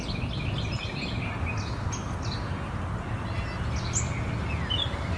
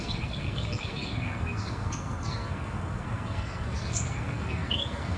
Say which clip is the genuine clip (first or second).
first